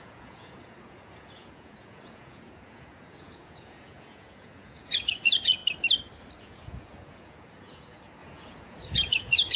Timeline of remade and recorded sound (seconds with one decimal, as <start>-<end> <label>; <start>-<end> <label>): 0.0-5.6 remade; 5.6-6.4 recorded; 6.4-9.6 remade